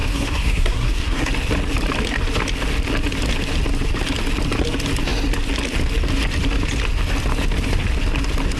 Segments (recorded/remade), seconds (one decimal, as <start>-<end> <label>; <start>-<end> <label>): 0.0-1.3 remade; 1.3-8.6 recorded